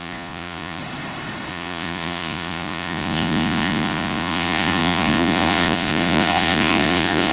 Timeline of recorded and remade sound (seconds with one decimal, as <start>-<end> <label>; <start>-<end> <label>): 0.0-0.8 remade; 0.8-1.5 recorded; 1.5-7.3 remade